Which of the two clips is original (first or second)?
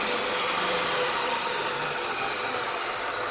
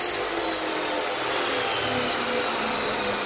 second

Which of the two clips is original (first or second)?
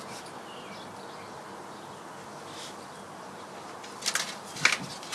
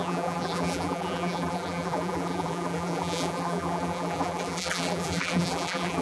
first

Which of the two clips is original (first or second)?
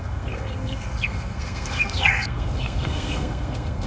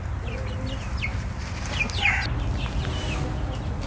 second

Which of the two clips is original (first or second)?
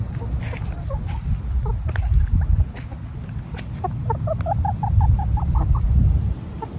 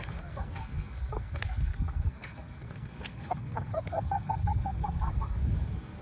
first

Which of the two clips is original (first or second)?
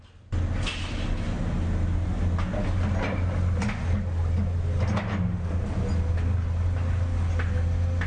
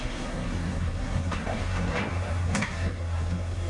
first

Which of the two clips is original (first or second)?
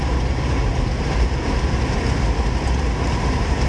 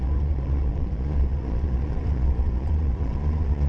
first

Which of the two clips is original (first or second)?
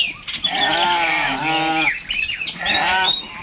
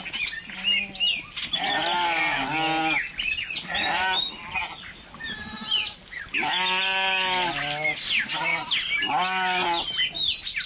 second